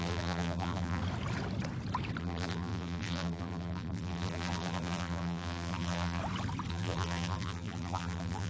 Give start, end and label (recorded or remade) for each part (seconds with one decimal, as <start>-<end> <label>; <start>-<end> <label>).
0.0-1.0 remade; 1.0-2.2 recorded; 2.2-6.2 remade; 6.2-6.7 recorded; 6.7-8.5 remade